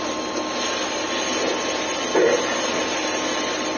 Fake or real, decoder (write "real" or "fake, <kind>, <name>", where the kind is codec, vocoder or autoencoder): real